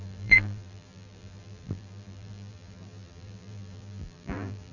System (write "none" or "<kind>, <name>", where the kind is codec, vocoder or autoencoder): vocoder, BigVGAN v2